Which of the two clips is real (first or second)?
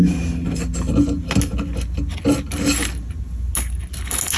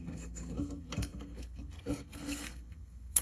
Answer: first